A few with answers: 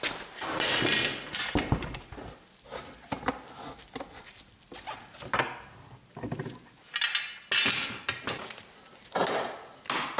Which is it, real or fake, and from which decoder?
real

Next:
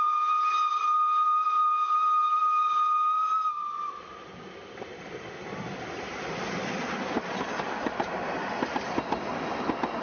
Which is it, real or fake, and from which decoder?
real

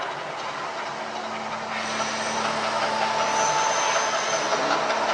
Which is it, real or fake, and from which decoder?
real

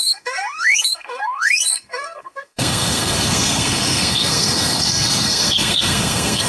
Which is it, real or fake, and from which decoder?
fake, codec, SNAC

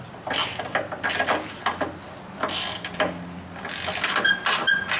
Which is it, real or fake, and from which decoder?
real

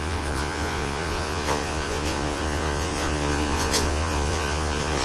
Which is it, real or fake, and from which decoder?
fake, vocoder, Vocos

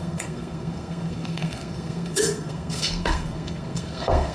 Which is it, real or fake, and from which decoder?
fake, codec, SNAC